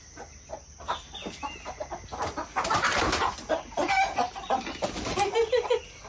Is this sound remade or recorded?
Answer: recorded